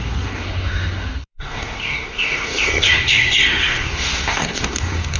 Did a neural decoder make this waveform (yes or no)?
yes